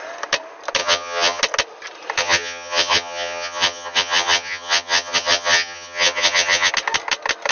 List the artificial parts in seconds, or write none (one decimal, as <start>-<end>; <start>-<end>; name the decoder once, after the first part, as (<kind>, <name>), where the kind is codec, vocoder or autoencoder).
0.8-1.4 (vocoder, HiFi-GAN); 2.2-6.7

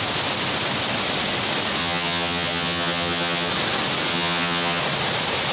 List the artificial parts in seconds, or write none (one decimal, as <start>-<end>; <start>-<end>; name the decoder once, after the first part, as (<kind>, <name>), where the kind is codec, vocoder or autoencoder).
1.8-3.5 (vocoder, HiFi-GAN); 4.1-4.8

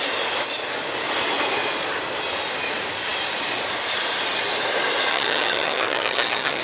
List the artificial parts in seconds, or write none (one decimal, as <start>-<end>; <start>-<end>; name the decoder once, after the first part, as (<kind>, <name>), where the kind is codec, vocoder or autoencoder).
5.1-6.6 (vocoder, HiFi-GAN)

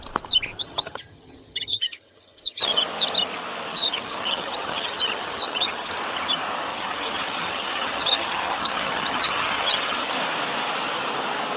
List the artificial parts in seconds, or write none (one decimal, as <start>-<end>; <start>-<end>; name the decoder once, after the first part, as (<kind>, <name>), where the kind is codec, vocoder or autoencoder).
0.6-2.8 (vocoder, HiFi-GAN); 3.7-5.9; 6.7-10.1

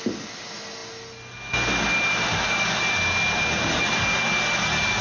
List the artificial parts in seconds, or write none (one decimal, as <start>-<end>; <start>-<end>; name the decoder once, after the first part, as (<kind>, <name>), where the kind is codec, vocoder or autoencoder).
none